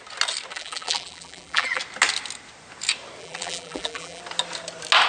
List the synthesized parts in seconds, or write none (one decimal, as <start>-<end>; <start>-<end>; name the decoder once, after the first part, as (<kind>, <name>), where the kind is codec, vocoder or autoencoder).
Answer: 0.5-1.8 (vocoder, BigVGAN v2); 3.2-4.2